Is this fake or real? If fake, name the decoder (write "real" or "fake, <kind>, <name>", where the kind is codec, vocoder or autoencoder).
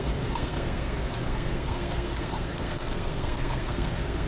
fake, codec, SNAC